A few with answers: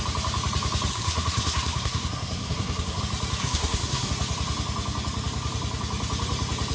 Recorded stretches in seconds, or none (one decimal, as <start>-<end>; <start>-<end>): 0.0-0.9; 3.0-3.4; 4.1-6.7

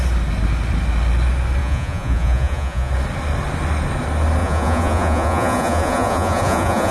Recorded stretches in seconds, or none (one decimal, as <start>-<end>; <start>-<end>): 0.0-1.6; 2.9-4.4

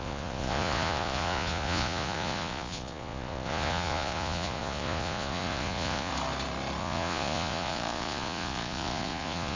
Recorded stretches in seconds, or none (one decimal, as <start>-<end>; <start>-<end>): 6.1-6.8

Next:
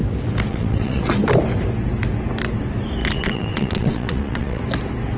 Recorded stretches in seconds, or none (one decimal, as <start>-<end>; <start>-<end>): 0.0-0.5; 1.1-3.0; 4.6-5.2